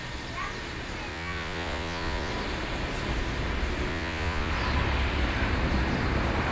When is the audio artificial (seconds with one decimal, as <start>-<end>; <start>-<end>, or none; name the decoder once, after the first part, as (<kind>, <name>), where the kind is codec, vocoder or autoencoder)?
1.1-2.3 (vocoder, Vocos); 3.9-4.5